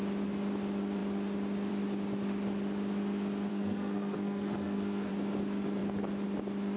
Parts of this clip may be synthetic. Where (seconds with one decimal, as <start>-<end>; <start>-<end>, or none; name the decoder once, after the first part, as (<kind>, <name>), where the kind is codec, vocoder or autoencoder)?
3.5-5.1 (codec, SNAC)